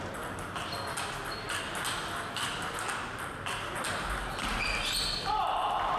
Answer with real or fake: real